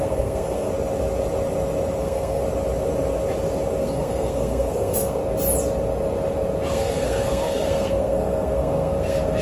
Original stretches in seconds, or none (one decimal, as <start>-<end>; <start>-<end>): 0.7-2.0; 2.4-3.8; 5.2-6.7